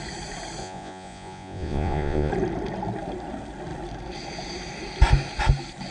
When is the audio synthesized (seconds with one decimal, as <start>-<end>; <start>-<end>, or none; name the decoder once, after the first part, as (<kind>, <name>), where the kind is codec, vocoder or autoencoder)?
0.6-2.3 (vocoder, Vocos)